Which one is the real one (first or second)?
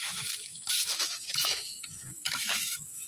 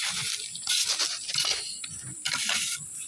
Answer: second